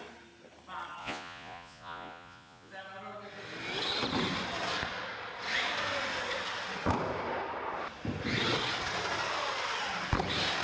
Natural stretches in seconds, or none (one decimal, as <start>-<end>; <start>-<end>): 0.0-1.0; 2.7-10.6